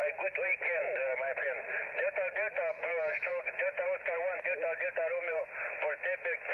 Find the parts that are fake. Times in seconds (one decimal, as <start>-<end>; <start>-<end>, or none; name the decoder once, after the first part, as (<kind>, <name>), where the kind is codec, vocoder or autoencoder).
0.5-2.1 (vocoder, BigVGAN v2); 3.3-5.4